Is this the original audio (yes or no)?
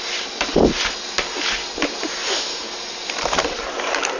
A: yes